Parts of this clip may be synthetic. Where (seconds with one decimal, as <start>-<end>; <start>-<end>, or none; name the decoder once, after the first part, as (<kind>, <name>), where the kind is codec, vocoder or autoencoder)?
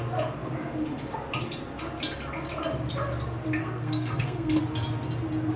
3.6-4.6 (codec, SNAC)